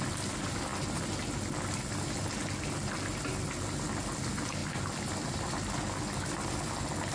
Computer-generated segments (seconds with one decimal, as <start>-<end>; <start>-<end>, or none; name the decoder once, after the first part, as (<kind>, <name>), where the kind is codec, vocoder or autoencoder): none